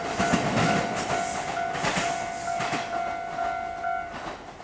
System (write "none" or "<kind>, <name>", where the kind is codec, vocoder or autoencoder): none